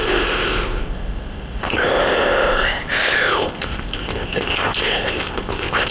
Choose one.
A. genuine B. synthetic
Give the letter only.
B